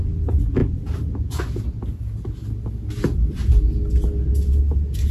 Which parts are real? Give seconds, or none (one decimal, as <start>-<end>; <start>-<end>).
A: 0.0-5.1